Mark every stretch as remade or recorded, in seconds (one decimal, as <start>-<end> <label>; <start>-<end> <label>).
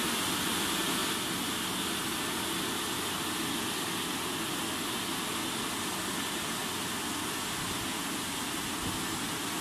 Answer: 0.0-9.6 recorded